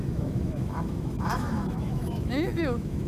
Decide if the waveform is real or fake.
fake